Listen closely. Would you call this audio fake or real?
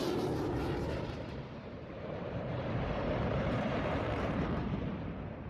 fake